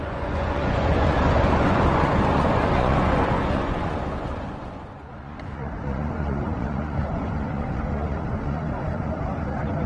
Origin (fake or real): fake